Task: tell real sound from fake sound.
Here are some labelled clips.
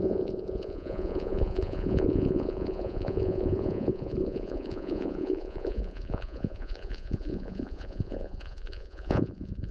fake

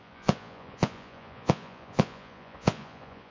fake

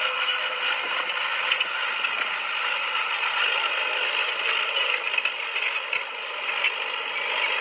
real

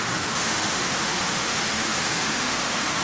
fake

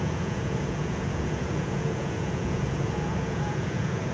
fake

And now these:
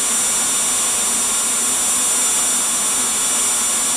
real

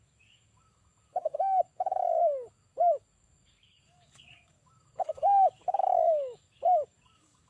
fake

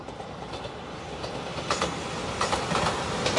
real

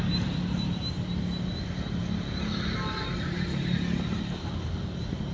real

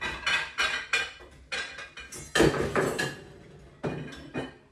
real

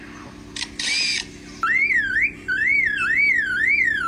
real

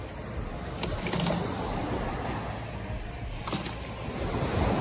real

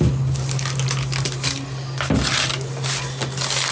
real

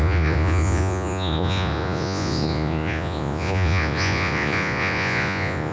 fake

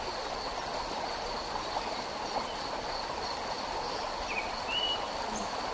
real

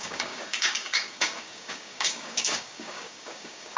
fake